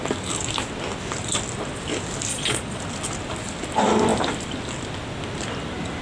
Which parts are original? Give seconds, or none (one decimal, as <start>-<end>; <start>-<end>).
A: 0.0-2.3; 2.8-6.0